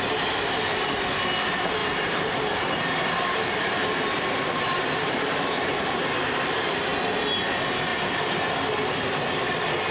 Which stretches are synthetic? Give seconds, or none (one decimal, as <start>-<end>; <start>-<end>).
1.8-6.0; 7.9-8.5